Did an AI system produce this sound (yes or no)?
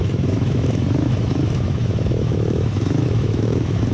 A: yes